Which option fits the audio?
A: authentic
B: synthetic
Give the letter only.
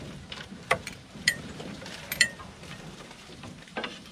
B